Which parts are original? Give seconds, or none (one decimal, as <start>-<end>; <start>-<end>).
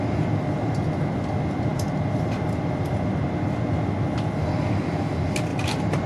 0.0-5.5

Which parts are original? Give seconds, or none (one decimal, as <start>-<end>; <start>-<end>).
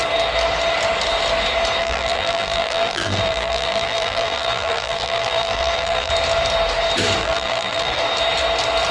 0.0-1.8; 6.1-7.2; 8.0-8.9